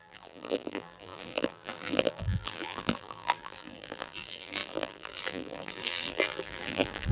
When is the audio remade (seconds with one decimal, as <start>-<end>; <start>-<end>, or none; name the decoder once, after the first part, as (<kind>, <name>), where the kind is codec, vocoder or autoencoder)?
0.0-7.1 (vocoder, BigVGAN v2)